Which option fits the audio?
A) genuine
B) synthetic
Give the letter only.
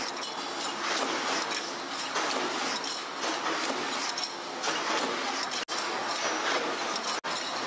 A